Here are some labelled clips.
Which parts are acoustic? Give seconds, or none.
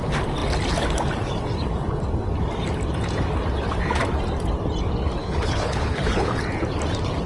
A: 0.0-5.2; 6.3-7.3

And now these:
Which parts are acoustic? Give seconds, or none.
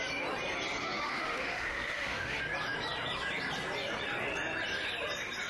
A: 0.0-0.8; 2.4-5.5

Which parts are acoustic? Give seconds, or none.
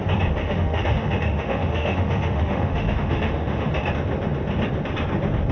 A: 0.0-0.4; 3.7-5.5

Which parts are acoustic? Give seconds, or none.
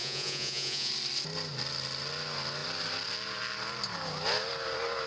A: 0.9-5.1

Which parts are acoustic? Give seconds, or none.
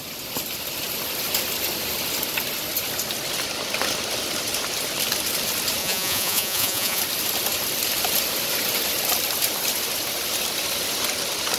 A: 0.0-5.8; 7.0-11.6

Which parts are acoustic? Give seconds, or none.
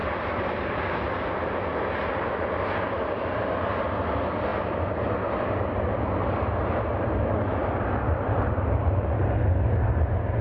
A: 0.5-7.6; 8.9-10.4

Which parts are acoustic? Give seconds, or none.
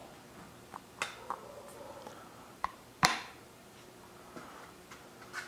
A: 0.0-1.7; 4.8-5.5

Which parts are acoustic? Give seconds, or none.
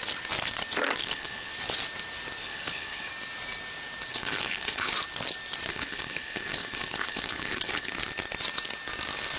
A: 0.0-1.0; 1.5-2.4; 3.1-4.1; 4.9-5.7; 7.9-9.4